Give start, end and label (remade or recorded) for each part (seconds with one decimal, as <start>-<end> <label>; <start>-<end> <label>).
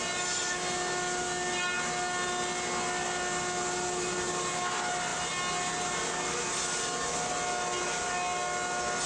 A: 0.0-9.1 recorded